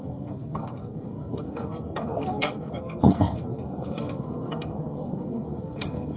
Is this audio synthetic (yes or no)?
yes